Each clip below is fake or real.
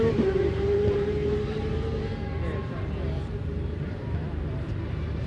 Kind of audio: fake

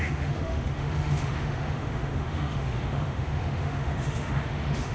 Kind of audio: fake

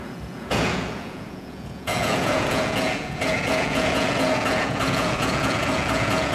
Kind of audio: fake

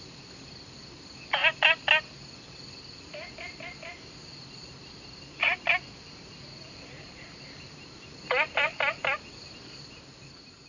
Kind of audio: real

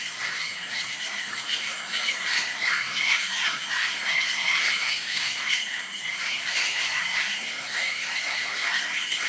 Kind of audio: fake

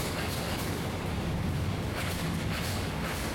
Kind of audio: fake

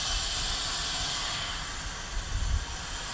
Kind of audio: real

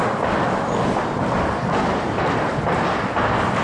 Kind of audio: real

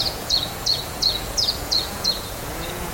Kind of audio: fake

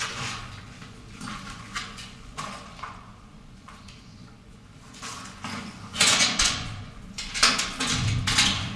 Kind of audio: fake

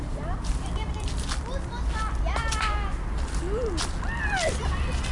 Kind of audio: real